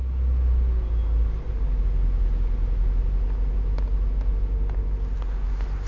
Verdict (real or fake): real